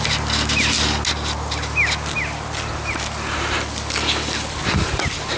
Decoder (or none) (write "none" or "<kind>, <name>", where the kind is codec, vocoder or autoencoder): none